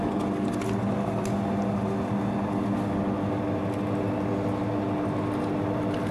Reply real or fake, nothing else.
real